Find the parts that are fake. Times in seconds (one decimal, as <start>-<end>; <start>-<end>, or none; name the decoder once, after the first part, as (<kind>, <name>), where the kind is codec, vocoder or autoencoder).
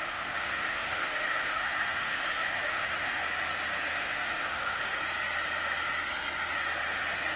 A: 0.0-3.2 (autoencoder, DAC-VAE); 4.0-5.0